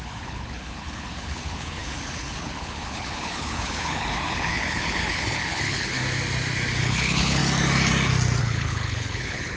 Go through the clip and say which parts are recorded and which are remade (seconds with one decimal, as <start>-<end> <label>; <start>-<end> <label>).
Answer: 0.0-6.0 remade; 6.0-6.8 recorded; 6.8-7.4 remade; 7.4-8.4 recorded; 8.4-9.6 remade